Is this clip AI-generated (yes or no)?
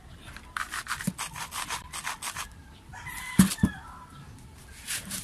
no